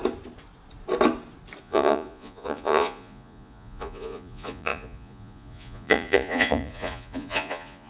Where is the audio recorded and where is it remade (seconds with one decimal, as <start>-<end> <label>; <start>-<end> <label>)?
0.0-1.6 recorded; 1.6-7.9 remade